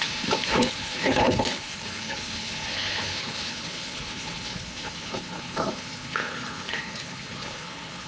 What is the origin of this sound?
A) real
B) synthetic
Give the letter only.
B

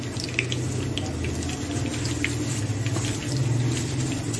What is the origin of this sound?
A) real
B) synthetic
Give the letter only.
A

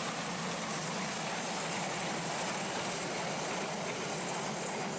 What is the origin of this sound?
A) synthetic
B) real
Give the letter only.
B